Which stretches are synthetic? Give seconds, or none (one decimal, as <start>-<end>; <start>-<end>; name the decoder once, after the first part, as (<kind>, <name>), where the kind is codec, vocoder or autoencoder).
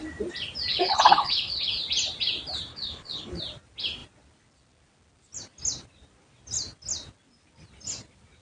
0.7-1.7 (codec, HILCodec); 2.7-3.4